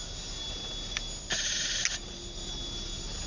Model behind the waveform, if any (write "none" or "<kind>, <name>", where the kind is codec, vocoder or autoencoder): none